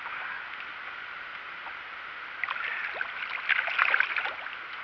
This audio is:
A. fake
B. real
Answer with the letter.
B